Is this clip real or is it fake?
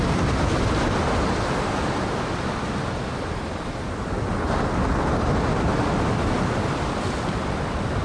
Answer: real